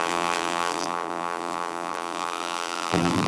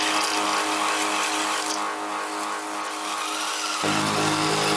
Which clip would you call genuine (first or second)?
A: second